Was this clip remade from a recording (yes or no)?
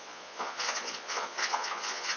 yes